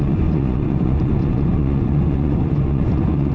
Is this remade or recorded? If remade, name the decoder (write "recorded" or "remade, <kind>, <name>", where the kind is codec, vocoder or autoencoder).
remade, vocoder, Vocos